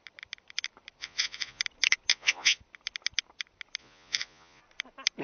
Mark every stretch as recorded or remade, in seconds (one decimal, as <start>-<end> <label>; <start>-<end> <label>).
0.0-1.0 recorded; 1.0-1.6 remade; 1.6-2.1 recorded; 2.1-2.6 remade; 2.6-3.8 recorded; 3.8-4.6 remade; 4.6-5.2 recorded